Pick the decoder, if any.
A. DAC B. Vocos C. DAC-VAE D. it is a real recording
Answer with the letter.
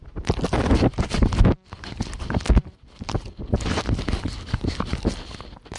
D